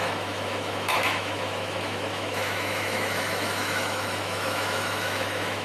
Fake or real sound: fake